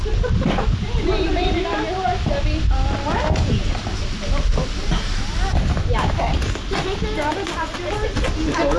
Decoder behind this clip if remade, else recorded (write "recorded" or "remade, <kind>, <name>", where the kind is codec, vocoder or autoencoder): recorded